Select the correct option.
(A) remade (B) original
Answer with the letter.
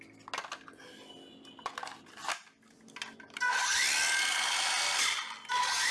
B